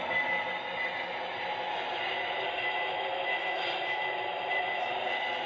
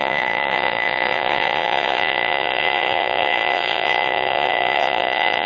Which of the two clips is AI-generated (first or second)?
second